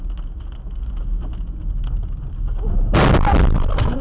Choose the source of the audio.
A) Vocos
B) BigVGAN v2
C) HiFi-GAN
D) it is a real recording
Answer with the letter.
D